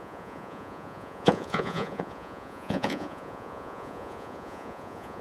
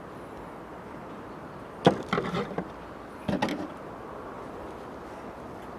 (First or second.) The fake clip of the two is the first